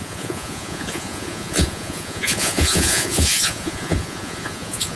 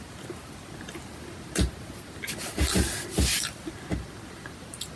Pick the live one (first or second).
second